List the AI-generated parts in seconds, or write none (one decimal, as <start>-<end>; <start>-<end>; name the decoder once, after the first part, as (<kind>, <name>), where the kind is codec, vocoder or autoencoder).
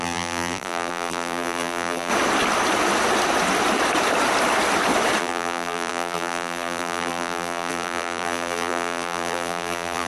0.0-2.1 (vocoder, BigVGAN v2); 5.2-10.1